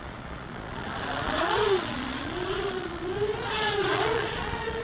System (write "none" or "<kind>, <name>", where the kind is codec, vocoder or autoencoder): vocoder, Vocos